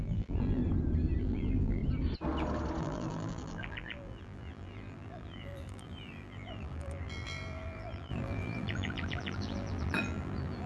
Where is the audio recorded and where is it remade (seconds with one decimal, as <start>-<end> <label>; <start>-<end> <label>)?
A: 0.0-0.6 remade; 0.6-1.2 recorded; 1.2-1.8 remade; 1.8-2.8 recorded; 2.8-10.7 remade